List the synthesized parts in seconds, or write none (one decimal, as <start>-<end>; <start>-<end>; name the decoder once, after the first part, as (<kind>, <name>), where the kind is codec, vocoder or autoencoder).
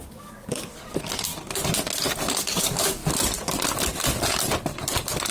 0.0-1.3 (codec, DAC); 2.3-3.0